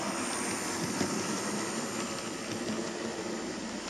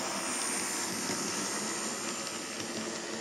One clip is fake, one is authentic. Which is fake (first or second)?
first